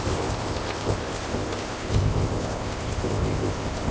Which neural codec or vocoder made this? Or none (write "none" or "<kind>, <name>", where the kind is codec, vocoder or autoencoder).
codec, ZipCodec